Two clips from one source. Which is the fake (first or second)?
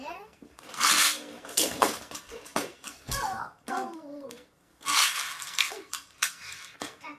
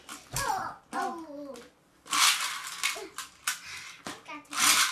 first